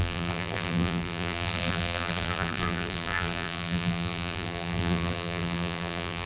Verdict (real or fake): fake